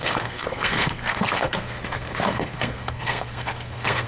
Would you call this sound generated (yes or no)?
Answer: yes